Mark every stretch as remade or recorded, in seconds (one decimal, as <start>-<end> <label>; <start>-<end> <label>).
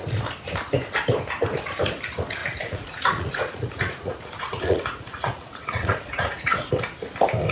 0.0-2.4 recorded; 2.4-6.7 remade; 6.7-7.5 recorded